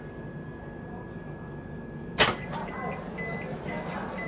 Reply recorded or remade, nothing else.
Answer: recorded